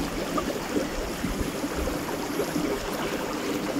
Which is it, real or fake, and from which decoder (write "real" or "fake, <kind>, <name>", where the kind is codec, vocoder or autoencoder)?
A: fake, vocoder, BigVGAN v2